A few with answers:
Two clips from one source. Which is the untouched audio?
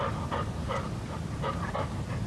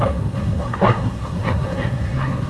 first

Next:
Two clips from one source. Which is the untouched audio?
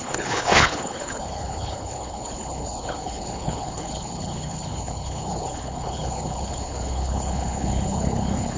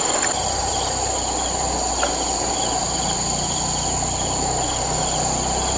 second